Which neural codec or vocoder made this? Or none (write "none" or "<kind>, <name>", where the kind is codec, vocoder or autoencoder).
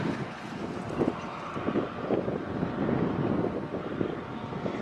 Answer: none